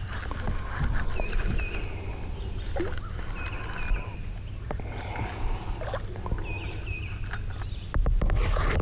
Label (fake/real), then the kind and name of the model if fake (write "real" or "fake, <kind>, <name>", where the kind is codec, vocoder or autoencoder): real